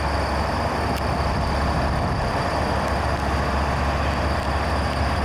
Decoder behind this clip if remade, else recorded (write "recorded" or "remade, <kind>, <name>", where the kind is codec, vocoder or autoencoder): recorded